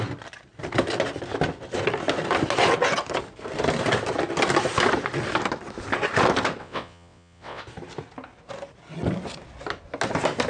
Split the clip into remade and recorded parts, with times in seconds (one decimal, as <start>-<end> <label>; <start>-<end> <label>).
0.0-6.6 recorded; 6.6-7.6 remade; 7.6-10.5 recorded

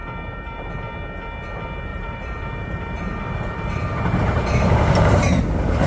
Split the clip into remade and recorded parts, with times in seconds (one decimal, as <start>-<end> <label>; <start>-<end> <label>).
0.0-0.7 remade; 0.7-1.9 recorded; 1.9-5.4 remade; 5.4-5.9 recorded

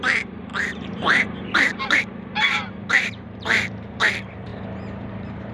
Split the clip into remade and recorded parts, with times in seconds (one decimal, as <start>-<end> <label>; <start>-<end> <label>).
0.0-4.5 remade; 4.5-5.1 recorded; 5.1-5.5 remade

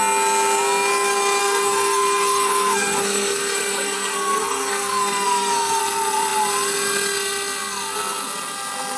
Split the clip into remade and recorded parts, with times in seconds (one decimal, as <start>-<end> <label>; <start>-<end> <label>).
0.0-1.4 recorded; 1.4-5.8 remade; 5.8-9.0 recorded